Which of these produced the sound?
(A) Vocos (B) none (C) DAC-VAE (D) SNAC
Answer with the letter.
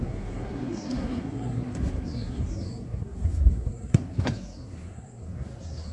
D